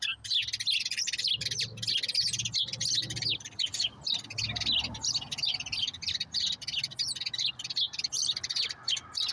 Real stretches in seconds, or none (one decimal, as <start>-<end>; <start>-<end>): 0.0-9.3